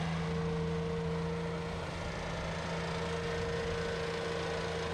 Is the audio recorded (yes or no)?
yes